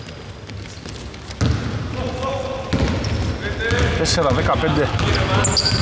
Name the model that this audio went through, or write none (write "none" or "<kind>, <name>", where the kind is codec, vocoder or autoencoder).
none